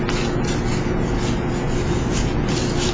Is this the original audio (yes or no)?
yes